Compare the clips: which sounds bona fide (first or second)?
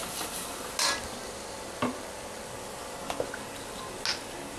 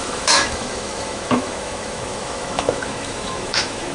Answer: first